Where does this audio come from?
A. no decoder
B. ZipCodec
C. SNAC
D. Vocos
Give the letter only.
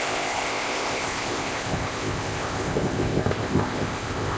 B